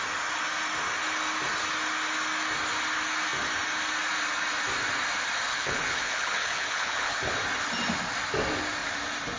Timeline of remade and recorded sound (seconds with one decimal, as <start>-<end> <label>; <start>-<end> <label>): 0.0-5.5 recorded; 5.5-7.3 remade; 7.3-9.4 recorded